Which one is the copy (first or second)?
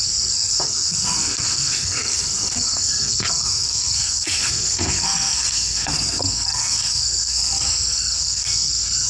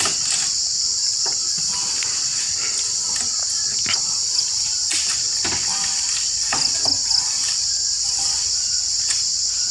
first